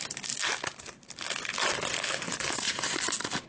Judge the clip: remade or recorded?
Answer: recorded